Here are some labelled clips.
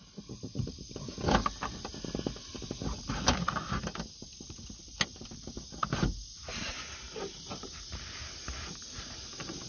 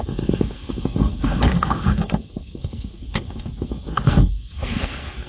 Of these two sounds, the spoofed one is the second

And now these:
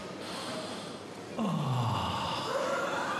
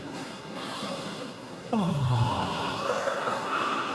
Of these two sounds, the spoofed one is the second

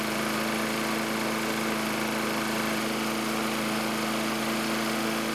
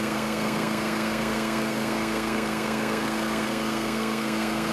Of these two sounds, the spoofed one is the second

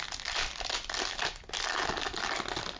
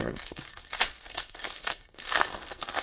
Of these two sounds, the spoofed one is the second